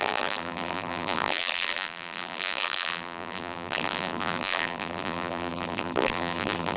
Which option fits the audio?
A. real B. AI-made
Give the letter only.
B